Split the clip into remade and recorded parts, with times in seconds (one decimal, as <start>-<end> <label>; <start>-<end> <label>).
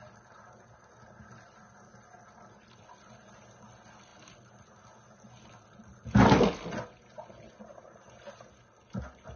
0.0-9.4 recorded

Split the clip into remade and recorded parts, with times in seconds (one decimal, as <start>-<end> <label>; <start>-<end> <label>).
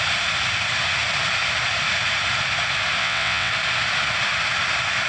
0.0-3.0 recorded; 3.0-3.5 remade; 3.5-5.1 recorded